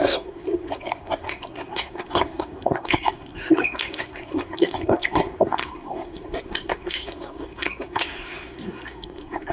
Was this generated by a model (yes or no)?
yes